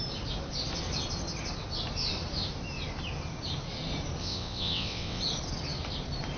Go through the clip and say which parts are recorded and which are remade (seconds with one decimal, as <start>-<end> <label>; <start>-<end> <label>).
0.0-4.2 recorded; 4.2-5.2 remade; 5.2-6.4 recorded